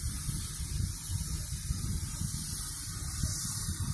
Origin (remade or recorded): recorded